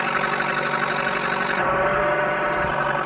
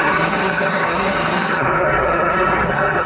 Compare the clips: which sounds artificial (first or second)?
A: second